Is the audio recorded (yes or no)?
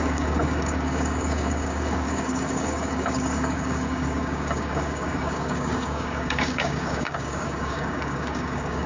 no